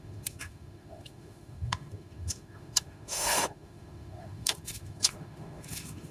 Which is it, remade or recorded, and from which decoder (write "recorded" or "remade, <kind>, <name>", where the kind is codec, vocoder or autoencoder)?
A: remade, autoencoder, DAC-VAE